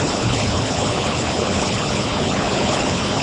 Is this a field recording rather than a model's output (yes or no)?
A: no